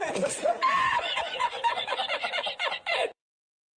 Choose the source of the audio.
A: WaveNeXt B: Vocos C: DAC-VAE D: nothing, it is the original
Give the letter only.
B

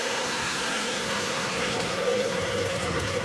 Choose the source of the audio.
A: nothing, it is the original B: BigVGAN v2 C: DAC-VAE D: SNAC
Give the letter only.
D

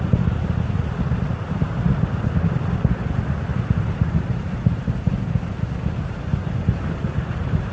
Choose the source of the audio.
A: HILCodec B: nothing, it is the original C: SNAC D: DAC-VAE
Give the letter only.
B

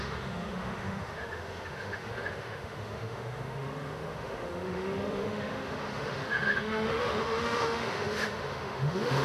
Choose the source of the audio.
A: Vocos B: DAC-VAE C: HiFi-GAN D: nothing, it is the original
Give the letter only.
B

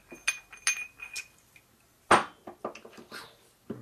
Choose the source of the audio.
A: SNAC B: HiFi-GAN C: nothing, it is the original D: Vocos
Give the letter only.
C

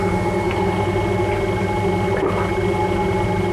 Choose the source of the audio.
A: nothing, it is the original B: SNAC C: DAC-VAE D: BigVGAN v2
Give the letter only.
A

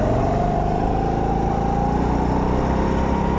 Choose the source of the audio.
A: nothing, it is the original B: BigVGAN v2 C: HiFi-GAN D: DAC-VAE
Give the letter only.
A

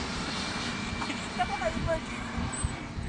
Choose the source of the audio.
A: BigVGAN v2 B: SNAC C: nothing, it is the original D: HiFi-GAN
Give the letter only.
C